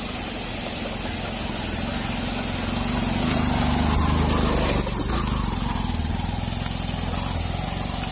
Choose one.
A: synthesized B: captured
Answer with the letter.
B